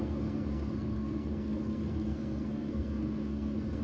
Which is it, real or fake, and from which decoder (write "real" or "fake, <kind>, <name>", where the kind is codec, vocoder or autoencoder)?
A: fake, codec, SNAC